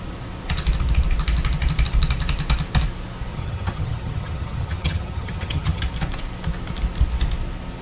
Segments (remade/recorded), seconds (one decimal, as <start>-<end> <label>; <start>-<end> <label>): 0.0-3.3 recorded; 3.3-5.8 remade; 5.8-7.8 recorded